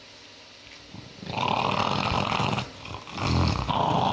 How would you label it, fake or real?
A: real